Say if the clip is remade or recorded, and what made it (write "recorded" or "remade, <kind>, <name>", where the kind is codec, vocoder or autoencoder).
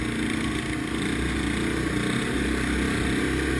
recorded